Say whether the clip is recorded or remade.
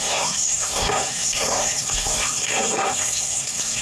remade